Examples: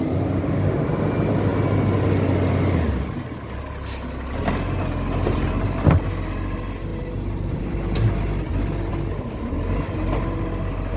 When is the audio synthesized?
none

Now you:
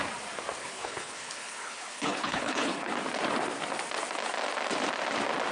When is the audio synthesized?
0.6-2.9 (codec, HILCodec)

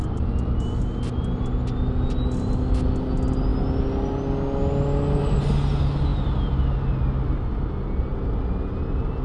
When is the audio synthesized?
none

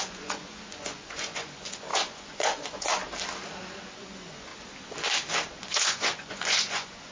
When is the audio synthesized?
0.0-3.0 (vocoder, Vocos); 3.8-4.5; 5.5-7.1

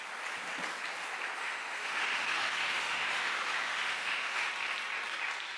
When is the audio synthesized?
1.4-4.5 (autoencoder, DAC-VAE)